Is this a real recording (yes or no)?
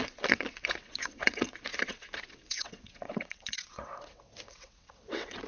no